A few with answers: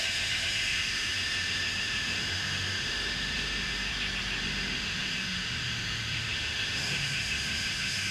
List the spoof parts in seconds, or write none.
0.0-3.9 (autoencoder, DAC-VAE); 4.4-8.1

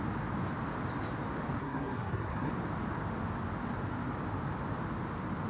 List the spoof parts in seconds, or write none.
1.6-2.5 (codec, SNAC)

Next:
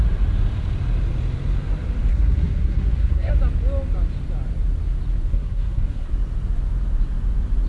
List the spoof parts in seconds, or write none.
2.1-3.3 (codec, SNAC); 5.3-6.1

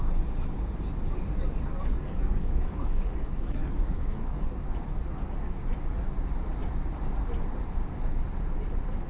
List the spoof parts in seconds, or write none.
1.7-4.5 (codec, DAC)